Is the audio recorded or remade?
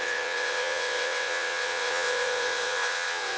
remade